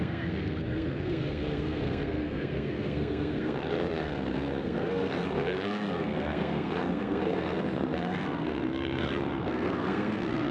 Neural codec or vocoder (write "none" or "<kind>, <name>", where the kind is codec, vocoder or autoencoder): codec, SNAC